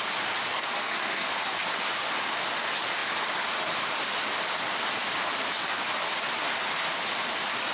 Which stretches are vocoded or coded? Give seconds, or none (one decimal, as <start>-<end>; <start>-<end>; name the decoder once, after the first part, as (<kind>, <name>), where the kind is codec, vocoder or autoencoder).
0.5-1.3 (codec, SNAC)

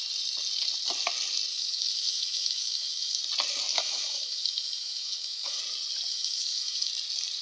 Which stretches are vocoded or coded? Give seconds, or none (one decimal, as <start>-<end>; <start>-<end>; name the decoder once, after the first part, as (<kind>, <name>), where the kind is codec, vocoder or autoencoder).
1.5-3.2 (autoencoder, DAC-VAE); 3.7-5.6; 6.1-6.9

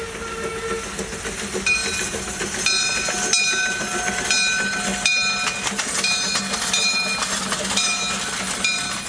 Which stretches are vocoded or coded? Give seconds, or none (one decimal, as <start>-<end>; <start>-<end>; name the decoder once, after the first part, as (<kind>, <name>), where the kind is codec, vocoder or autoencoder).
none

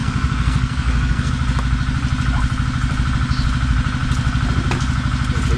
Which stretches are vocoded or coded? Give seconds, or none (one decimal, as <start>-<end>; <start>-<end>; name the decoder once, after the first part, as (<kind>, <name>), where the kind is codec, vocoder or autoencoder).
0.0-1.3 (codec, SNAC)

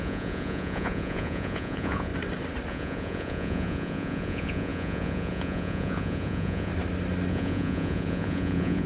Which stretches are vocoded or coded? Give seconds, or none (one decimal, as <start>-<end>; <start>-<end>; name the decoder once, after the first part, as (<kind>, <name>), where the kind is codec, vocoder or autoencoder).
0.0-2.1 (vocoder, Vocos); 2.7-6.7; 7.3-8.9

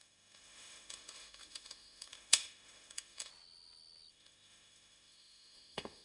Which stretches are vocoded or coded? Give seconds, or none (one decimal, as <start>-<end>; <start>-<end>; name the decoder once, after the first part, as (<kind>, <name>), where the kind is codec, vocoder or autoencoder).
0.0-3.3 (autoencoder, DAC-VAE); 4.1-6.0

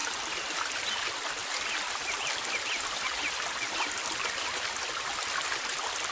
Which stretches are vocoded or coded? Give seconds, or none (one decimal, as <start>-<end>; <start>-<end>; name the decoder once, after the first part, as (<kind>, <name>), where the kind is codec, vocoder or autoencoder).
none

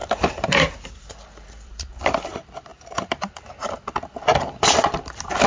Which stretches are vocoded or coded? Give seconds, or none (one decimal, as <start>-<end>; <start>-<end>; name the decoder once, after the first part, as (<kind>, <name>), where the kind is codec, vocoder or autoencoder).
0.0-2.0 (vocoder, BigVGAN v2); 2.7-3.7